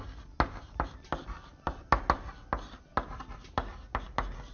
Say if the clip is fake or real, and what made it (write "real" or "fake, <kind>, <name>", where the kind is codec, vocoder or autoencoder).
real